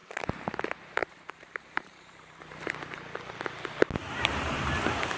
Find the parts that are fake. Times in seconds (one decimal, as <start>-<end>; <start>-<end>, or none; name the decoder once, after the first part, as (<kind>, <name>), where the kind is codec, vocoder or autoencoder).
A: 0.0-0.5 (vocoder, BigVGAN v2); 1.0-2.7; 4.0-4.7